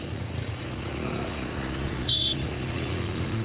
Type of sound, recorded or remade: remade